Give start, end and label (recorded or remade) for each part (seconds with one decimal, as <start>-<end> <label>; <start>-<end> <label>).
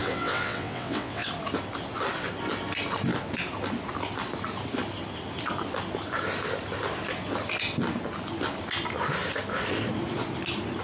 0.0-1.3 remade; 1.3-10.8 recorded